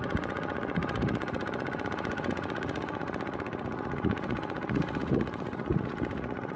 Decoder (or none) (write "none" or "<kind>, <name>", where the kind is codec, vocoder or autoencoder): vocoder, Vocos